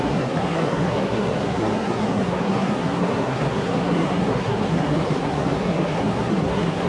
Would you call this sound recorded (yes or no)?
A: no